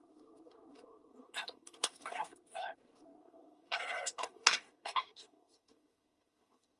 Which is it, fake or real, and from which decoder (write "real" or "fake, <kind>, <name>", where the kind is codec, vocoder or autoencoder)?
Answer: fake, codec, SNAC